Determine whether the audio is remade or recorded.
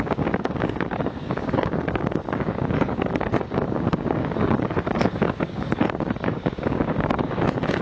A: remade